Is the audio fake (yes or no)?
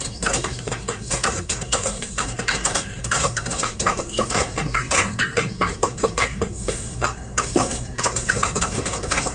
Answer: yes